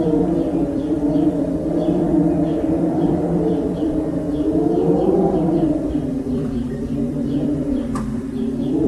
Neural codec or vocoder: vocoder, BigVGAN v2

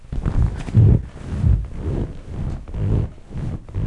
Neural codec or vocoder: none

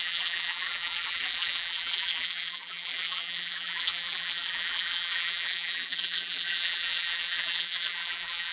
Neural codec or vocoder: vocoder, BigVGAN v2